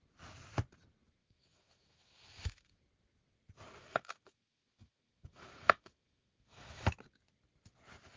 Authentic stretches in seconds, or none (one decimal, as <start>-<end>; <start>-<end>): 0.0-1.2; 2.8-3.8; 6.8-8.2